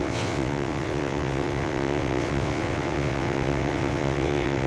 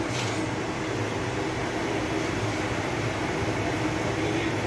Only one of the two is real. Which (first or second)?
second